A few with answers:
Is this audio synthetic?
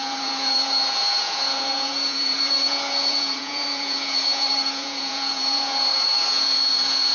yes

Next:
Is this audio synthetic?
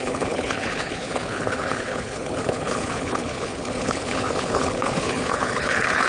yes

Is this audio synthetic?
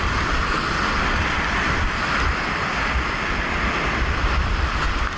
no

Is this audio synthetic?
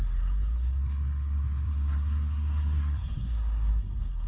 yes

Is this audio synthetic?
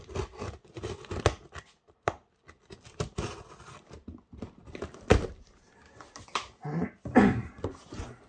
no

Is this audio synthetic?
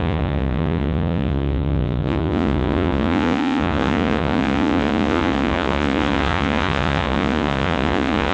yes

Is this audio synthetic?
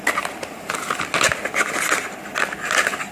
no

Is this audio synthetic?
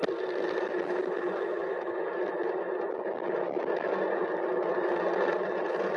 no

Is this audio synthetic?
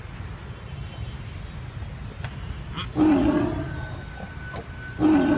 no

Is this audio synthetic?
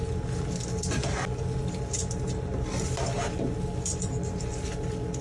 no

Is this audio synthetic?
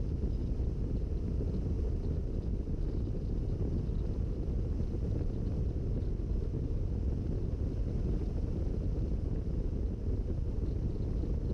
no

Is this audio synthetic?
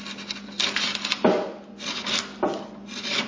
no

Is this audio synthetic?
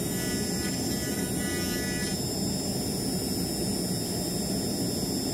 no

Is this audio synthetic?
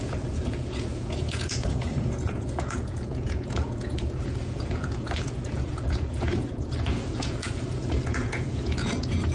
yes